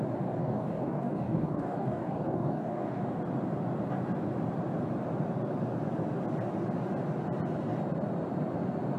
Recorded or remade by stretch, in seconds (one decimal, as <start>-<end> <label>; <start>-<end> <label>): 0.0-0.4 recorded; 0.4-3.2 remade; 3.2-9.0 recorded